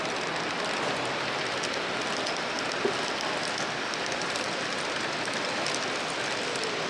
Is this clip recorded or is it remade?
recorded